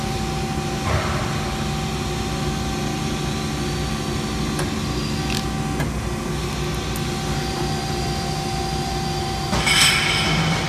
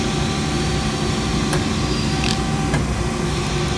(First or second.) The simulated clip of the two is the second